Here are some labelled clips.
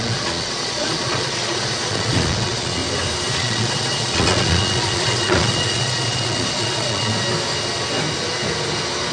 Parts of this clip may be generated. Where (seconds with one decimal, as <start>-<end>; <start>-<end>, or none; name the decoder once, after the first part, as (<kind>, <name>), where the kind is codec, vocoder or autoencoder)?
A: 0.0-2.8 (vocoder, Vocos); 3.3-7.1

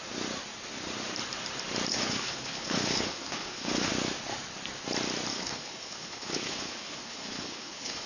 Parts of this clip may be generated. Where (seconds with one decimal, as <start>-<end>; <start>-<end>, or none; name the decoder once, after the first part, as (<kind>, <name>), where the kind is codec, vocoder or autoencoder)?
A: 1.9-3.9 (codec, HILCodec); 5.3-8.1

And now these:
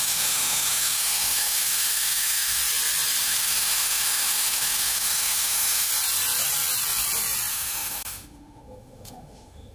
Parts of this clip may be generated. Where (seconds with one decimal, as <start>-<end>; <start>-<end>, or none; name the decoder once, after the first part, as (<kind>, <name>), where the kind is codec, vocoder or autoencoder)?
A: 0.0-2.6 (autoencoder, DAC-VAE); 3.2-5.9; 7.5-9.7

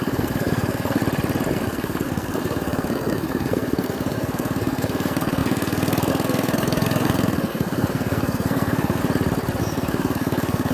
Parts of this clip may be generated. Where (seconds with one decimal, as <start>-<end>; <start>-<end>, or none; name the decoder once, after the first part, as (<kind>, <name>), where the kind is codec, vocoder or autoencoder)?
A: 0.0-1.0 (codec, SNAC); 1.5-9.0; 9.6-10.7

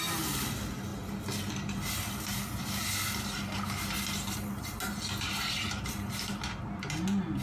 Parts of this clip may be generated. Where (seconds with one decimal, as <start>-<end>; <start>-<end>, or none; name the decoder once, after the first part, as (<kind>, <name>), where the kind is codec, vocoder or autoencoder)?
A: none

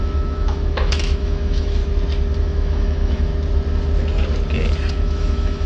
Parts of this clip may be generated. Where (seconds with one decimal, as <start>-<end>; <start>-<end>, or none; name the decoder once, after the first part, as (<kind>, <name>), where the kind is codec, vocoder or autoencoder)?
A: 0.0-1.8 (autoencoder, DAC-VAE); 2.4-3.3; 4.9-5.7